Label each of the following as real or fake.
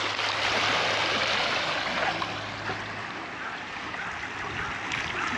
real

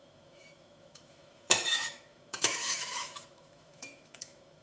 fake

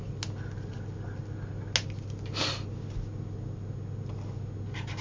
real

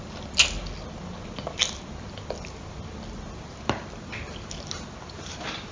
real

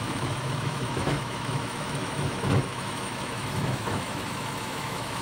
fake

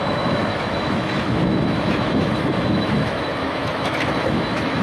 fake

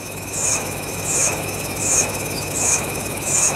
fake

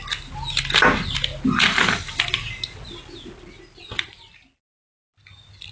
real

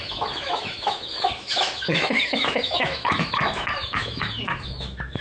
fake